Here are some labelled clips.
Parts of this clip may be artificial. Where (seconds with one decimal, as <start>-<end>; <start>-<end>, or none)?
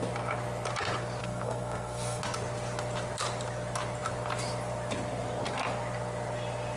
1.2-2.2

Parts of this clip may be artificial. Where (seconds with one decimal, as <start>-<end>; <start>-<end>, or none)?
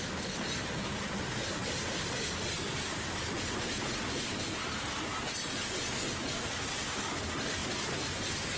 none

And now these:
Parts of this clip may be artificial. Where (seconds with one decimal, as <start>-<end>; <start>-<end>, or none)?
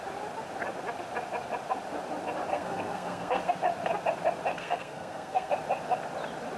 2.5-3.5; 4.5-5.5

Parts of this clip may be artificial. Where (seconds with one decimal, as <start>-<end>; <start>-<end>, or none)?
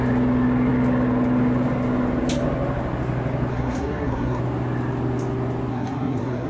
3.5-4.4; 5.7-6.5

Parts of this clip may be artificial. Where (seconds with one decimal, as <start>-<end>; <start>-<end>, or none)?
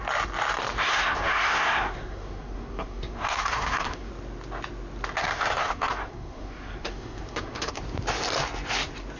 0.8-4.1; 5.2-7.8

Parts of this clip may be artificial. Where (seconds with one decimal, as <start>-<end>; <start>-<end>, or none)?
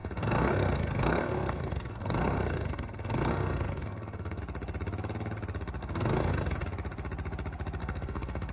0.0-4.4; 5.8-6.3; 7.8-8.5